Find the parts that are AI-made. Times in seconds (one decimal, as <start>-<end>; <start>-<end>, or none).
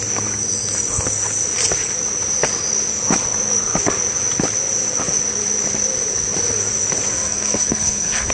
7.1-8.3